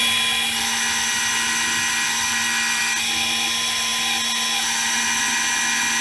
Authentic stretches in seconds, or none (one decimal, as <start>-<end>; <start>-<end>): 0.0-6.0